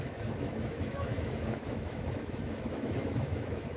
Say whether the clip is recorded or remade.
remade